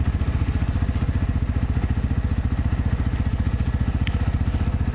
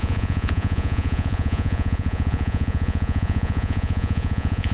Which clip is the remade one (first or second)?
second